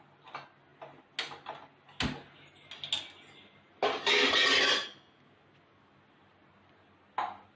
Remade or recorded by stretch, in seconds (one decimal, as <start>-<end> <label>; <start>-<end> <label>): 0.0-7.6 recorded